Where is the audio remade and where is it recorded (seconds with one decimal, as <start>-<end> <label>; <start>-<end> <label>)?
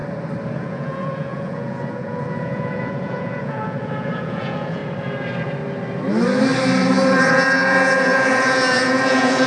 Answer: 0.0-0.6 recorded; 0.6-4.8 remade; 4.8-7.3 recorded; 7.3-9.5 remade